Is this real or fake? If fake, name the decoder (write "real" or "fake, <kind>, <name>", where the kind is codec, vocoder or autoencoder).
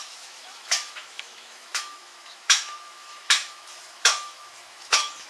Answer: fake, autoencoder, DAC-VAE